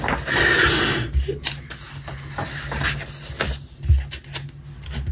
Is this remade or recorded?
recorded